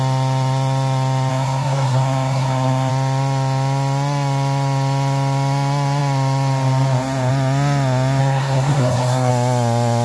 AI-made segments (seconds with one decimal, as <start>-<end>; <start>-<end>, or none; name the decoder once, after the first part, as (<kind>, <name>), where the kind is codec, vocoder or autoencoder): 1.3-2.9 (codec, SNAC); 8.2-9.3